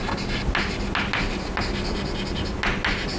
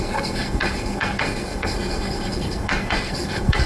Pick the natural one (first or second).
first